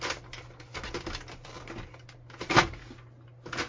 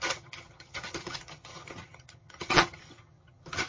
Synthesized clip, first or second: second